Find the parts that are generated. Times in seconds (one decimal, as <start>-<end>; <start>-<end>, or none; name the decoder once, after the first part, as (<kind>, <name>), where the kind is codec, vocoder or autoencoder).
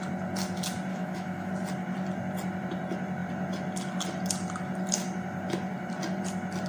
0.9-1.5 (autoencoder, DAC-VAE)